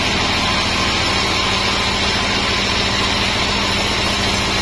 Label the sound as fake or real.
real